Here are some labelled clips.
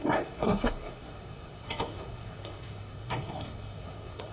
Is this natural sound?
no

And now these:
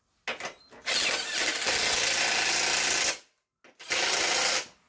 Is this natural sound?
yes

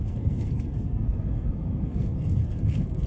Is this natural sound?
no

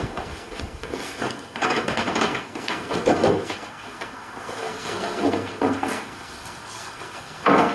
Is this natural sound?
no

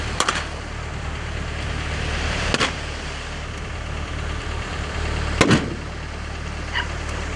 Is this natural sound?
yes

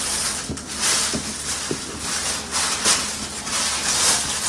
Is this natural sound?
yes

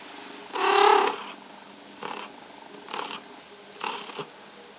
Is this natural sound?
yes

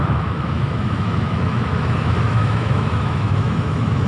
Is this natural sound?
no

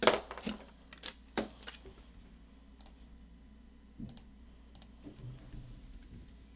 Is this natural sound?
yes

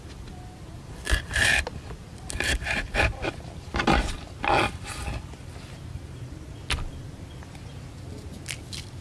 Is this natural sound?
yes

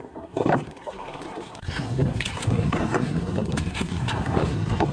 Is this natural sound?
no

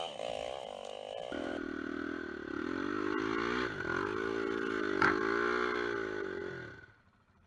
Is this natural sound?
yes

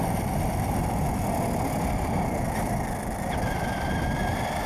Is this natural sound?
no